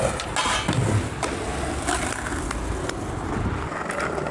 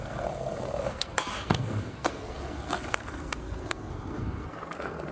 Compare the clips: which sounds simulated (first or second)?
second